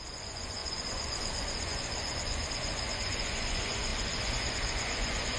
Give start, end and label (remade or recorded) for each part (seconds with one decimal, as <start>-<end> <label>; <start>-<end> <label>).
0.0-5.4 remade